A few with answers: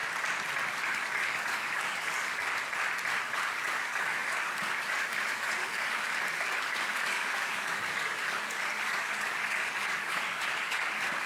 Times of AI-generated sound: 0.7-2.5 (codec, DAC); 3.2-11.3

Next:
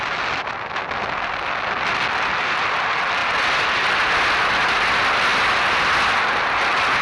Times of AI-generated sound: none